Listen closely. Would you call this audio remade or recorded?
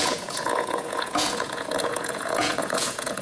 remade